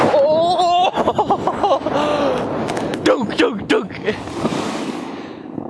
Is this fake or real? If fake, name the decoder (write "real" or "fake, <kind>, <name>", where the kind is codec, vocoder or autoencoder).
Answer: real